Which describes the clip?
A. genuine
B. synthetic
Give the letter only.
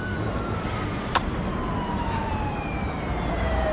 B